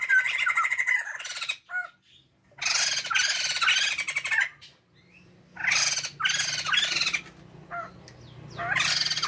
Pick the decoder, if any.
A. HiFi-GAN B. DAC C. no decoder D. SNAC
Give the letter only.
C